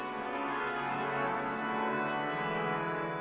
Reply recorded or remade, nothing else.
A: recorded